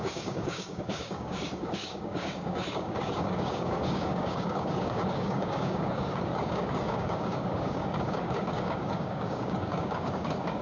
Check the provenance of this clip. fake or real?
fake